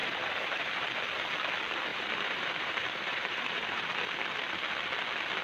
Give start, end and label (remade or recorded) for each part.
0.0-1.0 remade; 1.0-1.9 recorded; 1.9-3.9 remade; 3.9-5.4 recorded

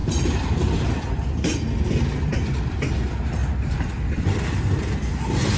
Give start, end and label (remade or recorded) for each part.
0.0-1.6 remade; 1.6-2.3 recorded; 2.3-2.9 remade; 2.9-3.4 recorded; 3.4-4.6 remade; 4.6-5.6 recorded

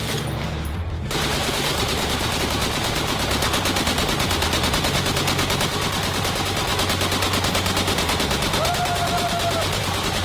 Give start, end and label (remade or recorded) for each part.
0.0-3.3 remade; 3.3-5.7 recorded; 5.7-6.7 remade; 6.7-8.7 recorded; 8.7-10.2 remade